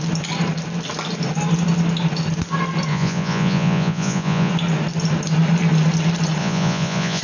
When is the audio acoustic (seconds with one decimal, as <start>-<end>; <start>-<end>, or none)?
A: 0.0-2.9; 4.5-6.4